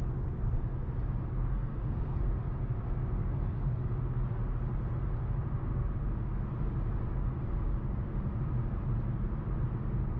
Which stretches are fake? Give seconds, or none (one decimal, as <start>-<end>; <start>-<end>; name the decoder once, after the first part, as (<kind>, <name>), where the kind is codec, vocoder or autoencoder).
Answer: 1.3-2.2 (codec, SNAC); 3.2-3.9